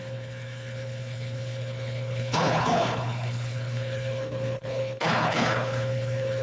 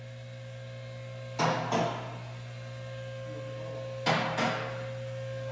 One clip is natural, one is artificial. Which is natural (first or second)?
second